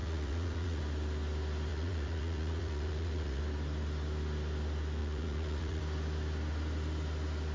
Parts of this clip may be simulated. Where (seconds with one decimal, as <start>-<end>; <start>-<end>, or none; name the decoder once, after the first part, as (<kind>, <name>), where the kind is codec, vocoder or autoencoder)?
0.0-0.8 (vocoder, Vocos); 1.7-3.4; 5.0-5.8